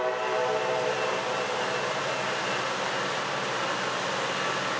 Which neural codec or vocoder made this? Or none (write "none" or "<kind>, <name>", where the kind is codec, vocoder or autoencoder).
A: none